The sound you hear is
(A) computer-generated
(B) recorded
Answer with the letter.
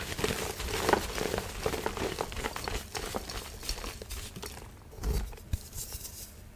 B